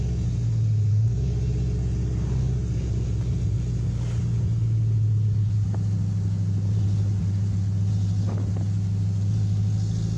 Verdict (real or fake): real